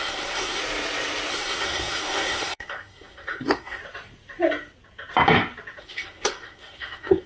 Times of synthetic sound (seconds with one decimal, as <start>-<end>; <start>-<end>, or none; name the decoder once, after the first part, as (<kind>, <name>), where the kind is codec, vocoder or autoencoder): 0.0-0.6 (codec, SNAC); 1.3-3.8; 5.8-7.3